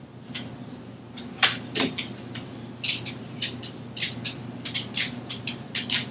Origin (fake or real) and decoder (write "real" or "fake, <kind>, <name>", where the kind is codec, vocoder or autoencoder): real